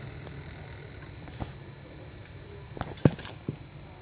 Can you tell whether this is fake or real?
real